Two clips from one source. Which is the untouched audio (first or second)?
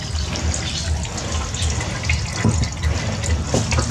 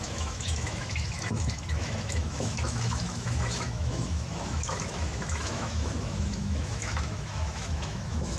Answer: first